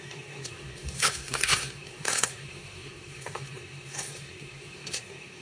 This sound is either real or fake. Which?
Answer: fake